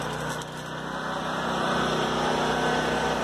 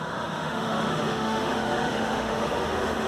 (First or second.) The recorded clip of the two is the first